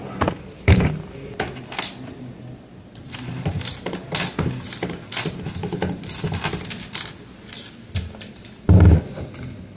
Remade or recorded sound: recorded